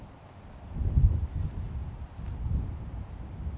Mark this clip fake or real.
real